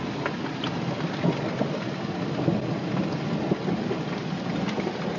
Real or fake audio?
real